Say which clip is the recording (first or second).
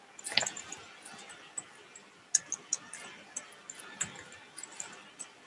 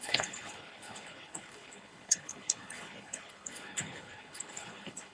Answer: first